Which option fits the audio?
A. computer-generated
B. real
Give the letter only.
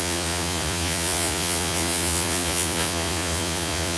A